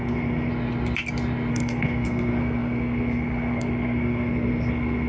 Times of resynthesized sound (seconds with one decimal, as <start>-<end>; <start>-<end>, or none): 0.0-0.5; 1.5-5.1